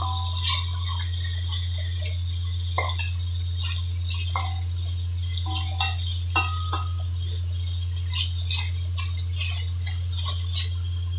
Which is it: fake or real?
real